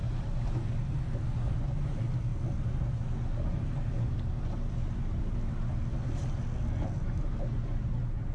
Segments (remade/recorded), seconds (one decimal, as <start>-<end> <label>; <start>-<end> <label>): 0.0-8.3 recorded